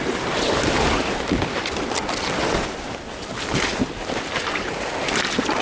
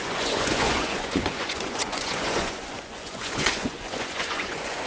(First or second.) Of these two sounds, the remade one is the second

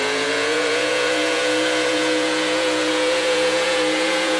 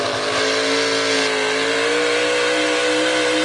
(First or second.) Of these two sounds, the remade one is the first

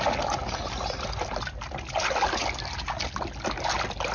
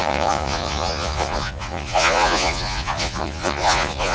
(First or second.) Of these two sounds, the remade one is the second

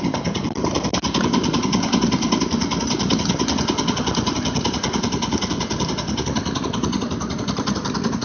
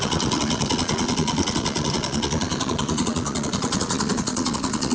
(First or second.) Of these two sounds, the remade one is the second